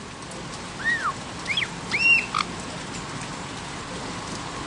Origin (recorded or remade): recorded